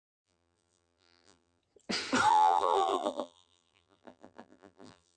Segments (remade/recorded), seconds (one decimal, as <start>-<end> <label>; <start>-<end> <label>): 0.0-1.6 remade; 1.6-2.3 recorded; 2.3-5.2 remade